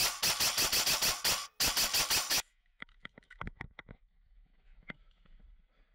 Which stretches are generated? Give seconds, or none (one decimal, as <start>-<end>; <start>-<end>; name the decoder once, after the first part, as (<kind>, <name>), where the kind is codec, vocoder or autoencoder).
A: 2.3-5.4 (autoencoder, DAC-VAE)